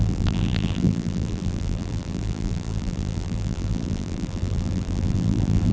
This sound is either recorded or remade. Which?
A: remade